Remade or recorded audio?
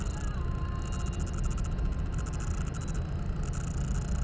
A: recorded